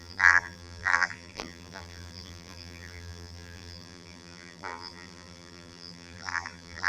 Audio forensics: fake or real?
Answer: fake